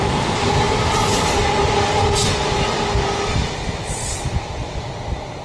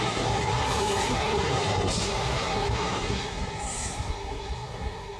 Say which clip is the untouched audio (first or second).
first